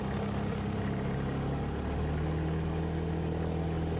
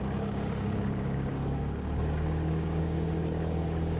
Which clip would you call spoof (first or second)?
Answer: second